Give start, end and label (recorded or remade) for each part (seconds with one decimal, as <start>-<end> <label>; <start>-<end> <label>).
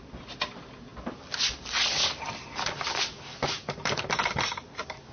0.0-0.9 remade; 0.9-1.6 recorded; 1.6-5.1 remade